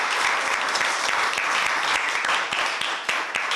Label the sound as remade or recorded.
recorded